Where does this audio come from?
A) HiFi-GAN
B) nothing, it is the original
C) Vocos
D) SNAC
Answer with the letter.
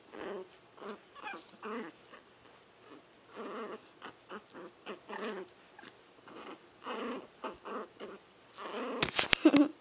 B